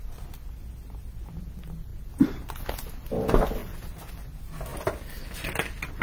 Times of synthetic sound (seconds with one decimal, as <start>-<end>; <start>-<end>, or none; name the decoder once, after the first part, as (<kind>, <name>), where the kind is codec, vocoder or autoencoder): 1.9-2.6 (vocoder, BigVGAN v2); 3.6-4.1